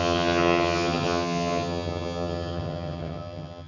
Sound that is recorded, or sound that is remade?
remade